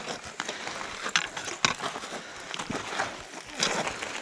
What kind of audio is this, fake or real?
real